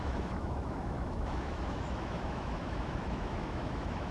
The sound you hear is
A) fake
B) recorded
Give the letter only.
A